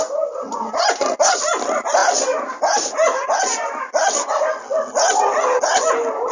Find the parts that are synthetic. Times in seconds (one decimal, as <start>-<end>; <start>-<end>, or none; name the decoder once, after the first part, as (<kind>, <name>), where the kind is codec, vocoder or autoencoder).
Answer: none